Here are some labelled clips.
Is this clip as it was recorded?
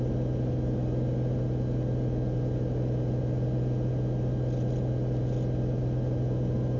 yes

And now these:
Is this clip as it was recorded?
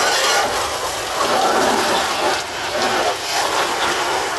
yes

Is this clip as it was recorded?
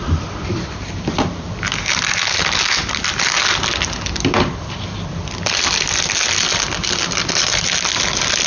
yes